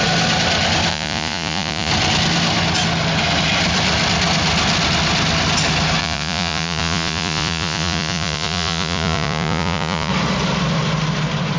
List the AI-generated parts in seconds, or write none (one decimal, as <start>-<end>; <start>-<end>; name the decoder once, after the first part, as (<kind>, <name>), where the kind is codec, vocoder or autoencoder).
0.9-1.9 (vocoder, Vocos); 6.0-10.1